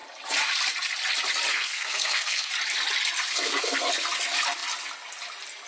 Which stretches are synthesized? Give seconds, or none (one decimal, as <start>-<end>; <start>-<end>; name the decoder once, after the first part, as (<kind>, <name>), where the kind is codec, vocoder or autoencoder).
1.5-2.5 (codec, SNAC); 3.3-3.9